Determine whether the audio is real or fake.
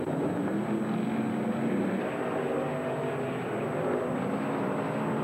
real